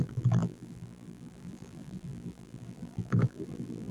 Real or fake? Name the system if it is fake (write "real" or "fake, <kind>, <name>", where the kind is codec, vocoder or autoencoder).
fake, vocoder, BigVGAN v2